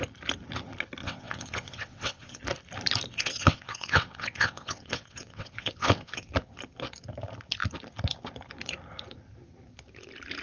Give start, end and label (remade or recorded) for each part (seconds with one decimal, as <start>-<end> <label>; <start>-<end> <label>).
0.0-1.0 recorded; 1.0-2.4 remade; 2.4-3.1 recorded; 3.1-6.3 remade; 6.3-10.4 recorded